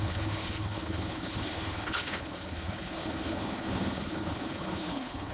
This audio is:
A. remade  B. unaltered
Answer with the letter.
A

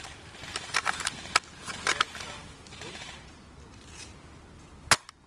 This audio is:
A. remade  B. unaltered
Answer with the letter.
B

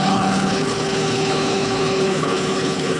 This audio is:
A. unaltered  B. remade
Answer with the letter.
B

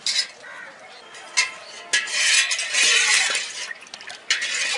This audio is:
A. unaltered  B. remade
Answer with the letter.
A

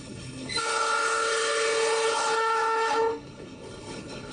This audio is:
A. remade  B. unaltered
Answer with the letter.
A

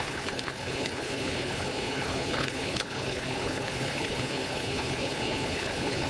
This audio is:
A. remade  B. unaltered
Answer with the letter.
A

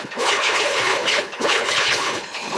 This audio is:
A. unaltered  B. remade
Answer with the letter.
B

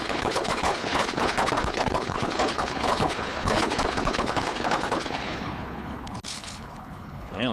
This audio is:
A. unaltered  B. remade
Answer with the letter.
B